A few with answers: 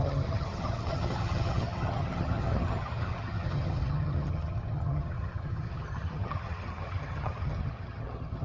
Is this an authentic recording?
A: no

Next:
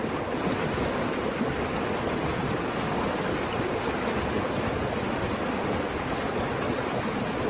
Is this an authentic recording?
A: yes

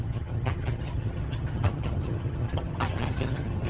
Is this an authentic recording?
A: no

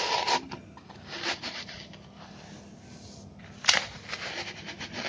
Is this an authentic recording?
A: yes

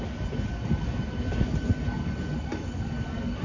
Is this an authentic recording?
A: yes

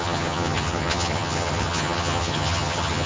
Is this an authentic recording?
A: no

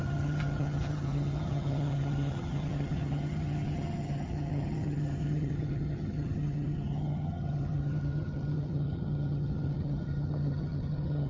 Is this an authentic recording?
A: no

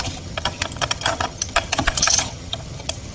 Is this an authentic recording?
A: no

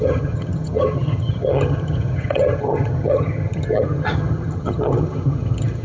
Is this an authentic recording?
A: no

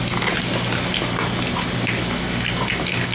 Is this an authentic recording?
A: yes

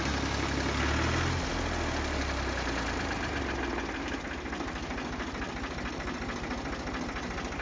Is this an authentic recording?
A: yes